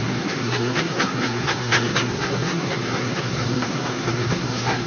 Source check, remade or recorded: remade